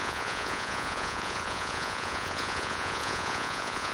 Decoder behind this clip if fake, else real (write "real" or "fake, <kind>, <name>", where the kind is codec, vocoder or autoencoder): fake, vocoder, Vocos